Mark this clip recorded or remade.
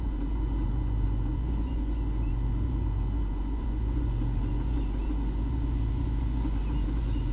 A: remade